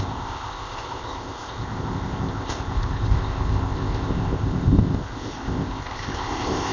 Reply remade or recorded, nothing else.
remade